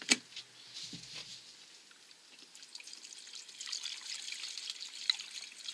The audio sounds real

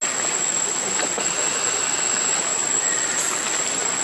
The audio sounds real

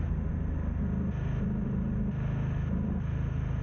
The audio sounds real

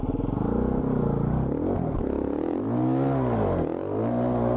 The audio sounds real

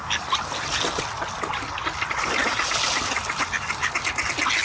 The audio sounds real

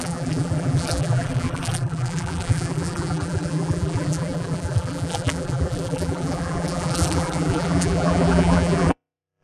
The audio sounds fake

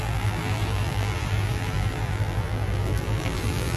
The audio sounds fake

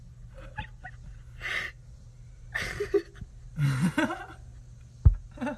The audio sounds real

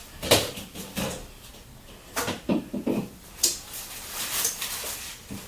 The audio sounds fake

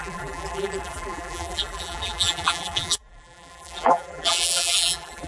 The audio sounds fake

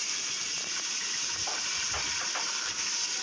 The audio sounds fake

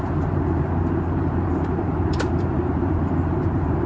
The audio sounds fake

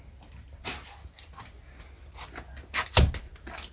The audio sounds real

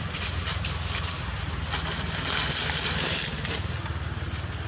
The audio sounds real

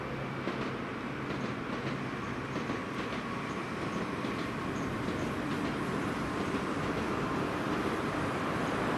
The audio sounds real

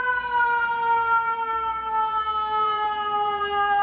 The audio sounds fake